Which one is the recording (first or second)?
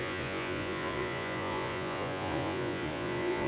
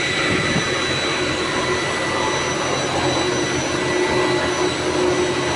second